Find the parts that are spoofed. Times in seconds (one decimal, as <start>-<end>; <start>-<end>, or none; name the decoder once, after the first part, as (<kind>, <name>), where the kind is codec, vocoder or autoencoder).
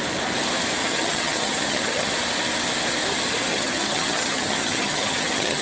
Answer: 0.8-2.1 (vocoder, HiFi-GAN); 3.5-5.6